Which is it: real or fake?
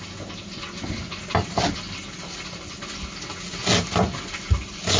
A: real